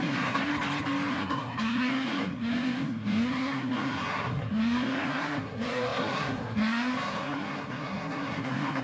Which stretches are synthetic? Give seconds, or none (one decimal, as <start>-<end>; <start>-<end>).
0.0-0.5; 1.1-8.8